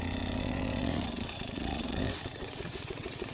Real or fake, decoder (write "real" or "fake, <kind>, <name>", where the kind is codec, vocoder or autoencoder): fake, vocoder, WaveNeXt